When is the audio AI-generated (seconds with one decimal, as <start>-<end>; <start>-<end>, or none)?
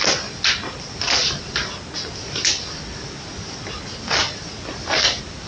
none